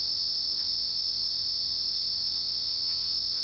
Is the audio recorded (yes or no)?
no